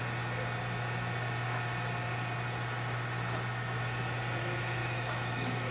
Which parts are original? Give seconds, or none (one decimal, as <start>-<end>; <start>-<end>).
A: 0.0-4.8